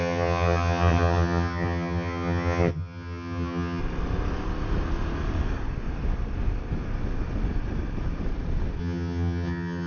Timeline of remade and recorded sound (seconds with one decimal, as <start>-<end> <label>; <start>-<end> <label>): 0.0-3.8 remade; 3.8-8.8 recorded; 8.8-9.9 remade